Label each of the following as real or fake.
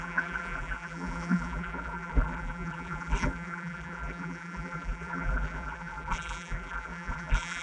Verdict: fake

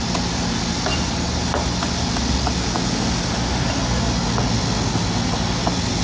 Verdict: real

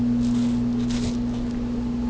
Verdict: real